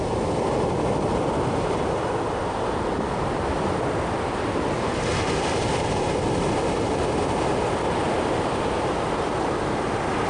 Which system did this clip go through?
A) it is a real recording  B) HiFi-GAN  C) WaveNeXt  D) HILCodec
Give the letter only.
A